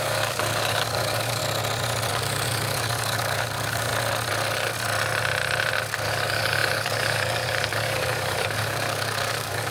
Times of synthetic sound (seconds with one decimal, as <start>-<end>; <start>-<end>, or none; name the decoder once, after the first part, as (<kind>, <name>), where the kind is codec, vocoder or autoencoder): 0.0-1.4 (codec, DAC); 2.1-3.9; 6.1-9.7

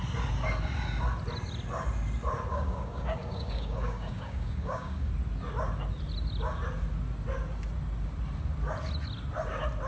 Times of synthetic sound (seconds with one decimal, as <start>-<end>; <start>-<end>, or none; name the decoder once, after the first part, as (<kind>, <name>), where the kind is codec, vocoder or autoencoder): 2.5-5.1 (codec, DAC)